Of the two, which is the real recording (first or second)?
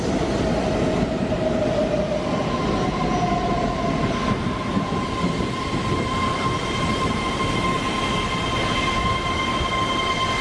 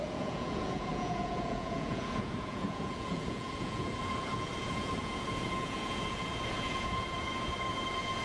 first